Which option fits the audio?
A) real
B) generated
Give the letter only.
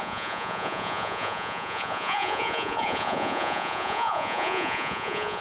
B